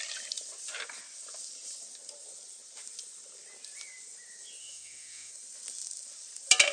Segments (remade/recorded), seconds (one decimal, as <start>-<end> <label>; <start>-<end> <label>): 0.0-4.6 recorded; 4.6-5.3 remade; 5.3-6.7 recorded